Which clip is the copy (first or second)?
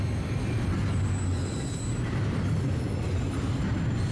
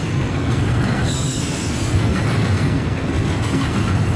second